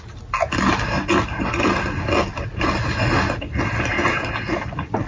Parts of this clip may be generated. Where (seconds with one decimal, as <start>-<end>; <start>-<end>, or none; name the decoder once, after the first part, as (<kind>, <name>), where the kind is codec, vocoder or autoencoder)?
none